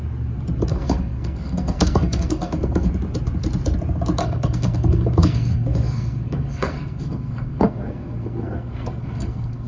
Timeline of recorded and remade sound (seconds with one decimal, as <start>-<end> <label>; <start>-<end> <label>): 0.0-0.7 recorded; 0.7-2.9 remade; 2.9-4.2 recorded; 4.2-9.7 remade